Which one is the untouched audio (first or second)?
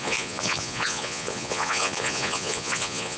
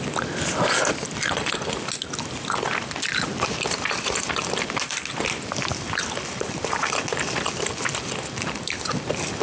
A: second